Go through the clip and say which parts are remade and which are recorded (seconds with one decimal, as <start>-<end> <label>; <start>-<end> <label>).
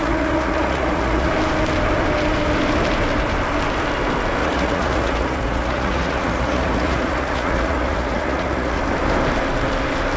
0.0-1.3 remade; 1.3-4.4 recorded; 4.4-8.8 remade; 8.8-10.2 recorded